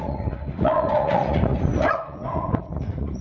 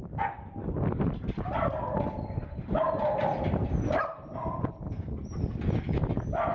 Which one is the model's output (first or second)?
first